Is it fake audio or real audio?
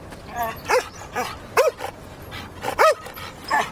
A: real